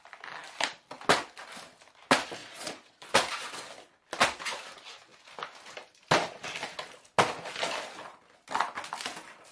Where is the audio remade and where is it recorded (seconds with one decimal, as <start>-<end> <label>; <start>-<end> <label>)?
0.0-2.4 recorded; 2.4-3.1 remade; 3.1-9.5 recorded